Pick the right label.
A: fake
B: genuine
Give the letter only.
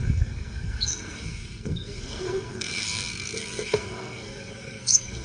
A